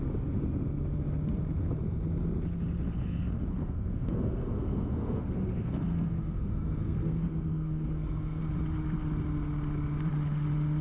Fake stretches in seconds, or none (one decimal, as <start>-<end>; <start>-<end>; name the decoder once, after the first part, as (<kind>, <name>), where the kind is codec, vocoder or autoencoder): 3.5-8.4 (codec, SNAC)

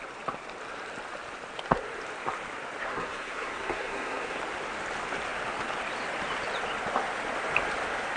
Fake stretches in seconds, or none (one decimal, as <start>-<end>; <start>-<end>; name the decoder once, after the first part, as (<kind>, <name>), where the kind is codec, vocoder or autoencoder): 2.8-4.4 (codec, SNAC)

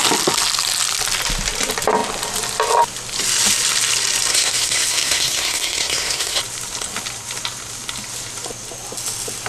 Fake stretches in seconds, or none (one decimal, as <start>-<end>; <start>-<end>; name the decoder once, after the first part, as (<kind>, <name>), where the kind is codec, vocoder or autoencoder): 4.3-6.4 (codec, SNAC)

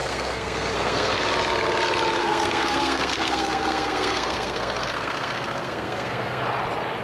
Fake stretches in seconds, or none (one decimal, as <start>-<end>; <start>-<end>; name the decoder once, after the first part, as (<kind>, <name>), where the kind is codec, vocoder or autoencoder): 0.0-1.1 (codec, SNAC); 2.2-6.4

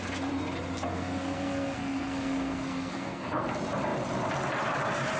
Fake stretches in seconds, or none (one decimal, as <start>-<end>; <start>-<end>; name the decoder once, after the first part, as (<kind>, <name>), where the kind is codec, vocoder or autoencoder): 0.9-3.5 (codec, SNAC)

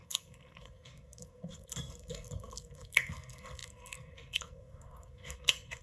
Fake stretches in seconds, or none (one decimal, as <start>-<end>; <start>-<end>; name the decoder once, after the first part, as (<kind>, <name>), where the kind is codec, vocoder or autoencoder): 0.0-5.8 (codec, SNAC)

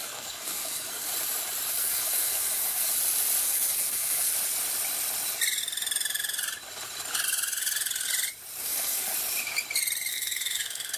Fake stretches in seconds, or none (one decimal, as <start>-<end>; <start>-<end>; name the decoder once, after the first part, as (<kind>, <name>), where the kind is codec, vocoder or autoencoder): 0.0-1.1 (codec, SNAC); 1.7-2.9; 3.4-4.3; 8.6-9.1; 10.1-11.0